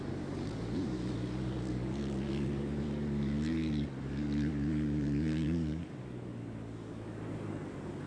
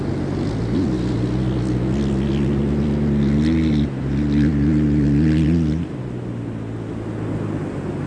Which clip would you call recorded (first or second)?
second